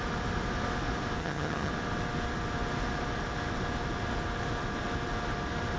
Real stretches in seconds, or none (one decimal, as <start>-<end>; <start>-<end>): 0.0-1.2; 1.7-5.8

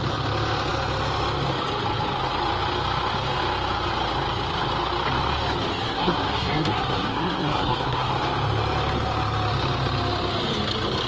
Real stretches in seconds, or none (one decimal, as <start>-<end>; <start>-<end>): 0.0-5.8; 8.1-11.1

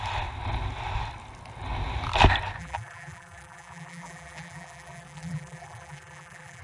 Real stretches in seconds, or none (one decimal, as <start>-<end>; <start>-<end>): 0.0-2.6